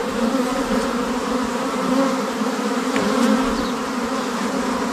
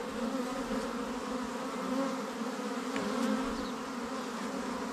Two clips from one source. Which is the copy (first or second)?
first